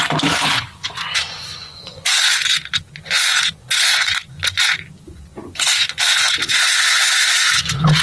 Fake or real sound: fake